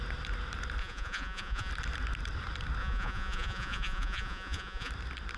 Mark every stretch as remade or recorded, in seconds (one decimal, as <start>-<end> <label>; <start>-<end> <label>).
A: 0.0-0.8 recorded; 0.8-1.7 remade; 1.7-2.8 recorded; 2.8-4.9 remade; 4.9-5.4 recorded